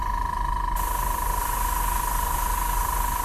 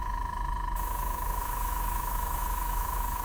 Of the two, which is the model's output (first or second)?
second